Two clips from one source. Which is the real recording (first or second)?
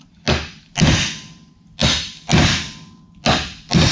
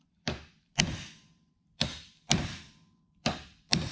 first